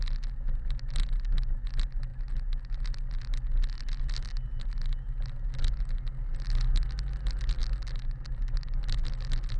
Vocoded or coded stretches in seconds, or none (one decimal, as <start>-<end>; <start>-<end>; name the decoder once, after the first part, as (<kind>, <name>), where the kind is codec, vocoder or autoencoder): none